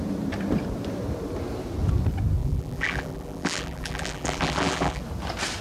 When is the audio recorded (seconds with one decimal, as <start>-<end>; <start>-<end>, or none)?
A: 0.0-2.4; 5.0-5.6